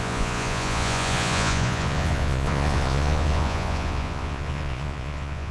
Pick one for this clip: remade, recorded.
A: remade